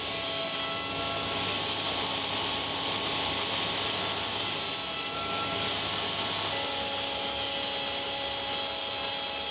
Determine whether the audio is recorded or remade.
recorded